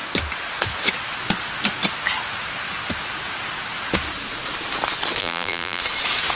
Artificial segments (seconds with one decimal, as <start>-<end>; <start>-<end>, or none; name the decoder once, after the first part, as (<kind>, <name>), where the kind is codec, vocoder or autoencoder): 5.2-5.8 (vocoder, BigVGAN v2)